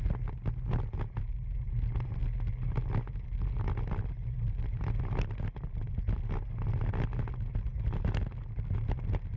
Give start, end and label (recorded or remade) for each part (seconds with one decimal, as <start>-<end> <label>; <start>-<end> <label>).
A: 0.0-9.4 recorded